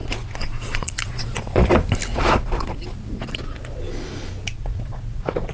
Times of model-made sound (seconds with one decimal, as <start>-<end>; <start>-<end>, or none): 0.0-1.7; 2.1-3.8; 4.5-5.5